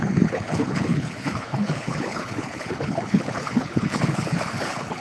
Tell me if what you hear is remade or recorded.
remade